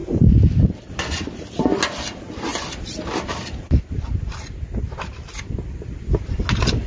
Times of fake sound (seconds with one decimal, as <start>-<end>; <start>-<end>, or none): none